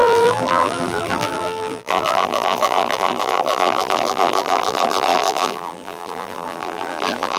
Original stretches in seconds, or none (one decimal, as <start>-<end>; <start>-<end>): none